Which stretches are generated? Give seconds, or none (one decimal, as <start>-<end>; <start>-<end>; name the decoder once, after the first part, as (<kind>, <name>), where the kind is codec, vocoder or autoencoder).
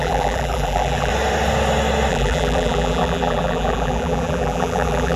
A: 0.0-1.1 (vocoder, BigVGAN v2); 2.1-5.2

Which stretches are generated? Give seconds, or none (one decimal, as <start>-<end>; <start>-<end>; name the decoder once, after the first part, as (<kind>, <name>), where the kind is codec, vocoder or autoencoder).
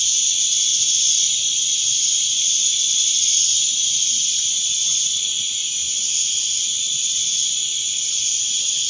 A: 0.7-5.2 (vocoder, Vocos)